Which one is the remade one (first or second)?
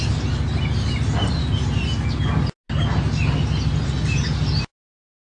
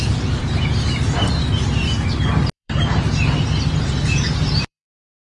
second